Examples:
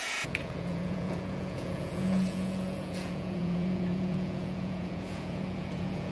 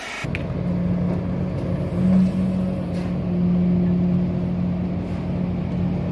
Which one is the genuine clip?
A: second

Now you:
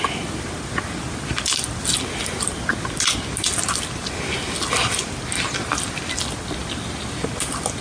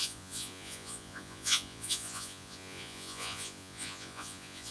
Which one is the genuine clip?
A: first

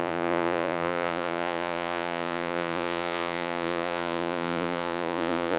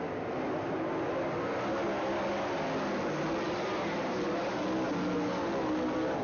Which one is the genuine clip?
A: second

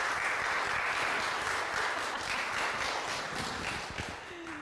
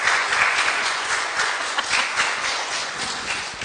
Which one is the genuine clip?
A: first